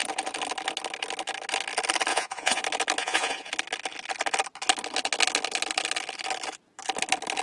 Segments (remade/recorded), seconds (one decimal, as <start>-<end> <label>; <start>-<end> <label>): 0.0-2.1 recorded; 2.1-2.6 remade; 2.6-3.0 recorded; 3.0-3.5 remade; 3.5-7.4 recorded